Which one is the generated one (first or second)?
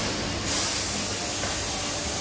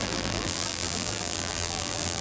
second